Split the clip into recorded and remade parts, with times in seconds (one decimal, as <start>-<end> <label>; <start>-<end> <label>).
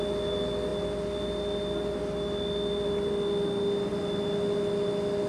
0.0-5.3 recorded